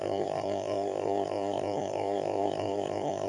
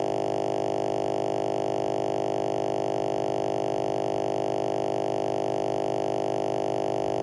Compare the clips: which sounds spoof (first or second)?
first